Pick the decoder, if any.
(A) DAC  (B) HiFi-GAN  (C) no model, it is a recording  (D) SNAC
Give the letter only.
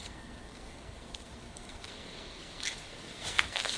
D